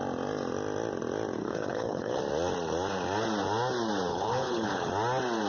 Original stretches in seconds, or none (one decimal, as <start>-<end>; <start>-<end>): 0.0-1.4; 2.2-4.1; 4.9-5.5